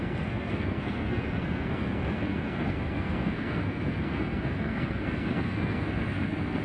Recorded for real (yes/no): no